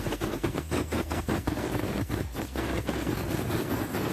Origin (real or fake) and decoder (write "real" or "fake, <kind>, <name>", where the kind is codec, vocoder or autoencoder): fake, codec, SNAC